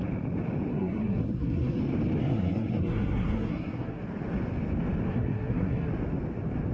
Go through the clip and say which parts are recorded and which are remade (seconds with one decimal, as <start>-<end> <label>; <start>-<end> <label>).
0.0-0.7 recorded; 0.7-1.8 remade; 1.8-2.2 recorded; 2.2-4.0 remade; 4.0-5.1 recorded; 5.1-5.9 remade; 5.9-6.7 recorded

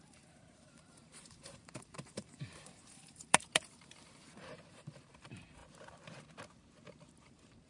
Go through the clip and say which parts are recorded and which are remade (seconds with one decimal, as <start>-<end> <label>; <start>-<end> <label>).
0.0-5.6 remade; 5.6-7.1 recorded; 7.1-7.7 remade

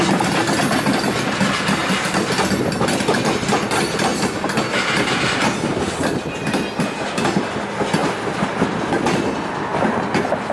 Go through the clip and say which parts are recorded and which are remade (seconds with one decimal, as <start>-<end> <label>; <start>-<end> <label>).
0.0-1.8 recorded; 1.8-2.5 remade; 2.5-10.5 recorded

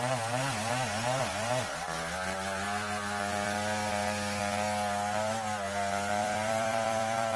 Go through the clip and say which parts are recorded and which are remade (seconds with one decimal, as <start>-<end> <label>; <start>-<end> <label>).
0.0-6.2 recorded; 6.2-7.4 remade

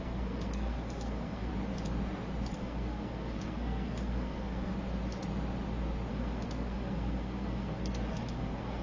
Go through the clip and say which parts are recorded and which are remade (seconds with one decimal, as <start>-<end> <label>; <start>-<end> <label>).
0.0-1.5 remade; 1.5-2.5 recorded; 2.5-4.7 remade; 4.7-6.1 recorded; 6.1-8.8 remade

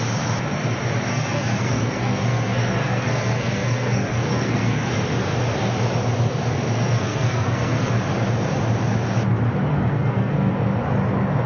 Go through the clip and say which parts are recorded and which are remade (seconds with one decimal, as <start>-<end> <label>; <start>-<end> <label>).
0.0-1.1 recorded; 1.1-4.9 remade; 4.9-6.7 recorded; 6.7-7.9 remade; 7.9-9.7 recorded; 9.7-10.5 remade; 10.5-11.5 recorded